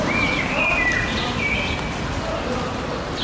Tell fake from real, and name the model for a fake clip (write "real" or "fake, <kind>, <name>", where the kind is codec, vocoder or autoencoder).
real